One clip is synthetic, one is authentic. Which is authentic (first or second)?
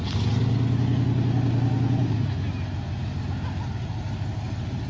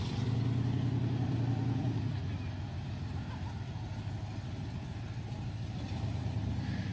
first